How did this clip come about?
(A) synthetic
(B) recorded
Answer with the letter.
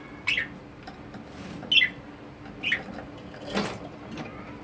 B